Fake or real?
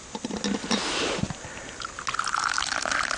real